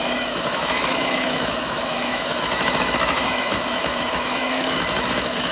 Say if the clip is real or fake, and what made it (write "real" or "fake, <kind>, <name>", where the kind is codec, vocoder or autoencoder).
fake, autoencoder, DAC-VAE